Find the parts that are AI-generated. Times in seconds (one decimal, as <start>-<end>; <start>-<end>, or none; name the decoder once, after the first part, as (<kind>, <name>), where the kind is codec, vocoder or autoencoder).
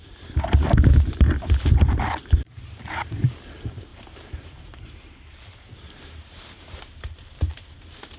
0.0-1.3 (vocoder, BigVGAN v2); 2.4-3.9; 4.4-8.2